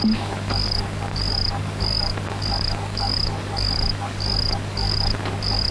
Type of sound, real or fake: fake